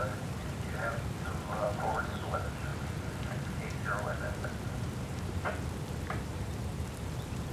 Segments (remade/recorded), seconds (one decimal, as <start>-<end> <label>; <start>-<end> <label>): 0.0-2.7 remade; 2.7-4.4 recorded; 4.4-7.5 remade